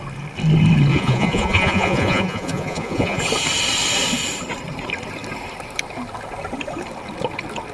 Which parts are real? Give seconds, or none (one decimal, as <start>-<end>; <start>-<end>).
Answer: 0.0-0.9; 3.2-7.7

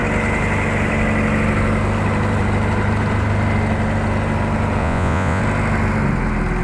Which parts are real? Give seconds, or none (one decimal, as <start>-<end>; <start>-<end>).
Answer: 0.0-4.8; 5.4-6.6

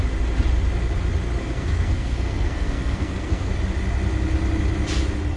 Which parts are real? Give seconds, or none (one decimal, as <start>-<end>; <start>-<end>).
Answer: 0.0-1.4; 3.5-5.4

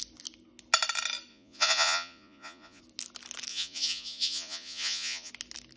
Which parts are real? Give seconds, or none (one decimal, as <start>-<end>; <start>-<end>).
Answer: 0.0-1.3; 2.8-3.5; 5.3-5.8

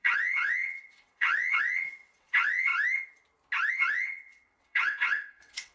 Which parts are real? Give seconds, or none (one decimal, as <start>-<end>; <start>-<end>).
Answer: 2.7-3.7

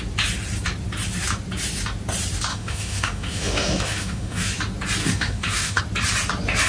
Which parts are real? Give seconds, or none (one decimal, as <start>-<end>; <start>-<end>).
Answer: 0.0-2.5; 4.6-5.0; 5.8-6.7